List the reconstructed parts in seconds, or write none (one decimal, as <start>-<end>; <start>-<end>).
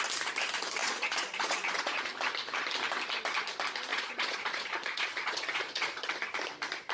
0.8-2.1; 3.9-6.1